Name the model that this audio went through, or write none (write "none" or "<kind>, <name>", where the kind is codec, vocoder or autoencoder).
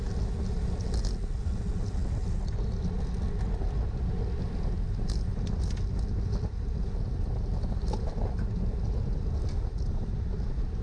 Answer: none